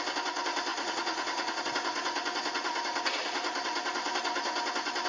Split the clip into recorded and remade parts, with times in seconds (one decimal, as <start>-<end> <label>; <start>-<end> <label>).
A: 0.0-0.7 recorded; 0.7-1.6 remade; 1.6-5.1 recorded